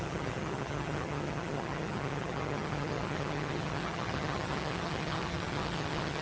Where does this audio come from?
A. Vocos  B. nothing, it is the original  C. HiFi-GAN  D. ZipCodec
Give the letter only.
C